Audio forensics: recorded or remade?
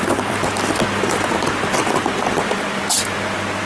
recorded